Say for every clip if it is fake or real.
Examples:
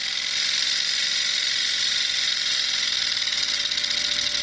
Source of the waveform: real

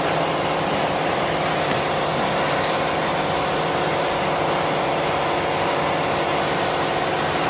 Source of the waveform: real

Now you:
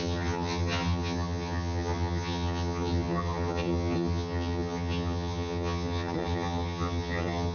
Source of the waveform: fake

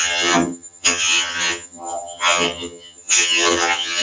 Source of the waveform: fake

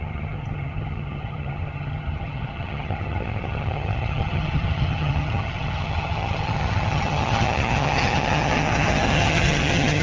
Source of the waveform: fake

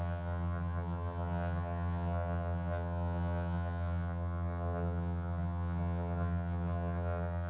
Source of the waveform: fake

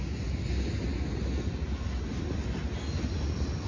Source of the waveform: real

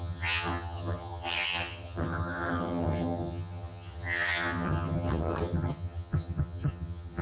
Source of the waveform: fake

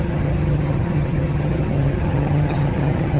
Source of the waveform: fake